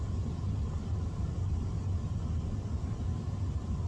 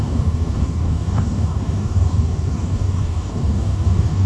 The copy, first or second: second